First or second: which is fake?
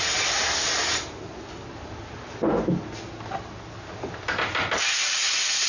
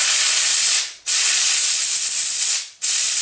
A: second